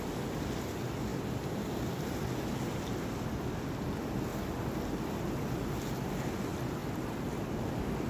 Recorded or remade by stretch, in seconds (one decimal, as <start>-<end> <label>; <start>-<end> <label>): 0.0-8.1 recorded